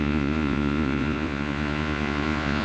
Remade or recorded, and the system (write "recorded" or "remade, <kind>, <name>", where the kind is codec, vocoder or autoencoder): remade, vocoder, Vocos